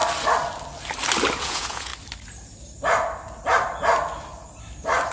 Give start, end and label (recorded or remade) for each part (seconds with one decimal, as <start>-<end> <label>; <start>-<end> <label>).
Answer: 0.0-1.4 recorded; 1.4-1.9 remade; 1.9-5.1 recorded